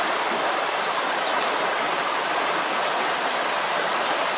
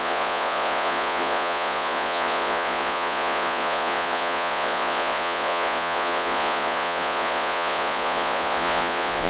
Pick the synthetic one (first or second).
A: second